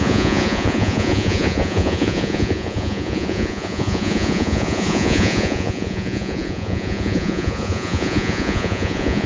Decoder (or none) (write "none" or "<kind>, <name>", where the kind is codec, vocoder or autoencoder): vocoder, Vocos